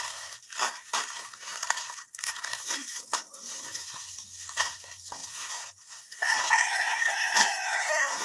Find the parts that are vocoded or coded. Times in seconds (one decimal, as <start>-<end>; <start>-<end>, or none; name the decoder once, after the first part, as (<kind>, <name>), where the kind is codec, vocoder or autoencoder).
0.0-8.2 (codec, SNAC)